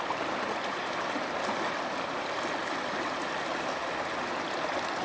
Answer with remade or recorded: recorded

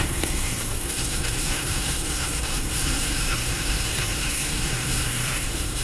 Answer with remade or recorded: remade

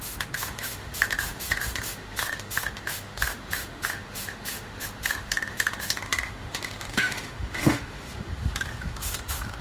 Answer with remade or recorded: remade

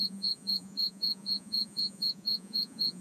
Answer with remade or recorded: remade